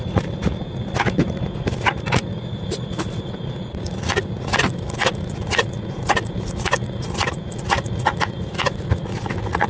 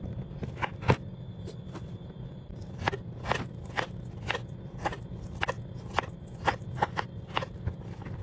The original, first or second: second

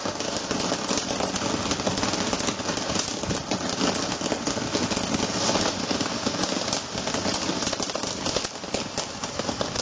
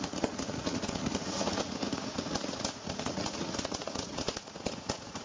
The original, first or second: first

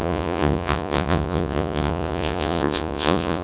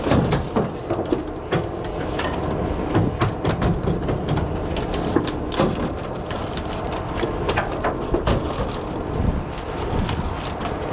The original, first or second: second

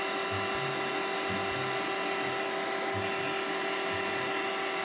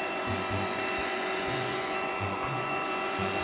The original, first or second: first